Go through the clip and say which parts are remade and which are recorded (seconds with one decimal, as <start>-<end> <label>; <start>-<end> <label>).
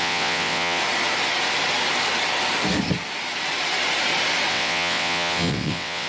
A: 0.0-0.8 remade; 0.8-4.5 recorded; 4.5-6.1 remade